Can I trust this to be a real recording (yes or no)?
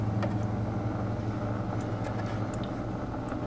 yes